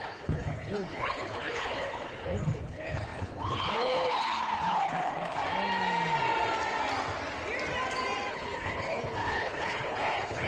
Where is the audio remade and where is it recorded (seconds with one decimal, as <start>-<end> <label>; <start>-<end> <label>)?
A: 0.0-5.4 remade; 5.4-8.3 recorded; 8.3-10.5 remade